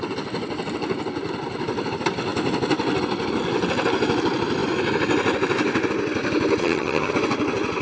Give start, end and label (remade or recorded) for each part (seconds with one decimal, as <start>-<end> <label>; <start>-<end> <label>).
0.0-6.6 recorded; 6.6-7.1 remade; 7.1-7.8 recorded